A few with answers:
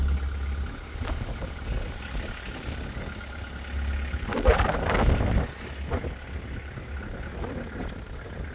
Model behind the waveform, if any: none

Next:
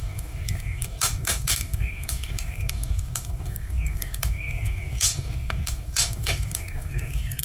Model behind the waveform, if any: codec, DAC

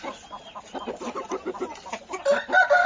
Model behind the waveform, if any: none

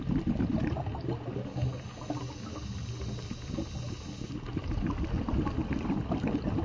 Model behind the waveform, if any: none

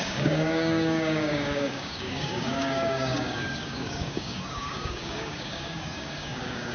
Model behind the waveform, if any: codec, DAC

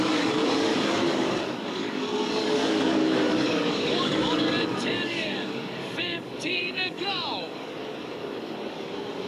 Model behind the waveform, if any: codec, DAC